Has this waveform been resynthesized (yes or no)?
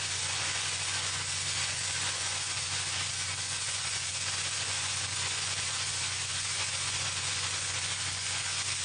yes